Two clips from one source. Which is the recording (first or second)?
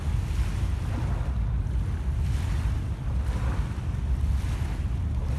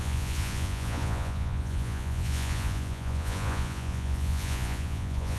first